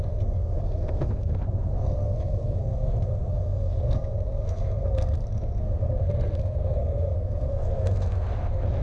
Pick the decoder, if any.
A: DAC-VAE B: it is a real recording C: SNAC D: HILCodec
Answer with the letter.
C